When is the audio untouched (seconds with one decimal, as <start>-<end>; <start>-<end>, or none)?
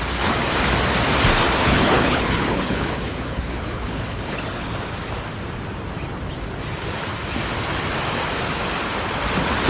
0.0-1.6; 4.7-9.7